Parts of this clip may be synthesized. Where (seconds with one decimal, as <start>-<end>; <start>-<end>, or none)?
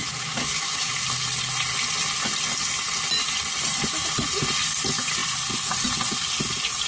0.0-0.9